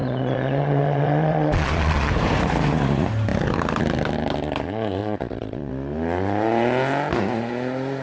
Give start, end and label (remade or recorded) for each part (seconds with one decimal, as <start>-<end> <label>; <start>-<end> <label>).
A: 0.0-2.1 remade; 2.1-5.0 recorded; 5.0-5.7 remade; 5.7-8.0 recorded